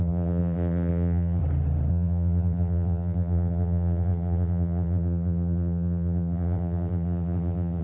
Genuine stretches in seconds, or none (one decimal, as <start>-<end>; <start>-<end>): 1.4-1.9